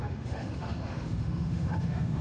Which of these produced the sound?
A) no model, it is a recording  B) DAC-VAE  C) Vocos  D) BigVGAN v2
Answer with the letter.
B